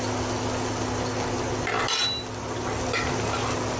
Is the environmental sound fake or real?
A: real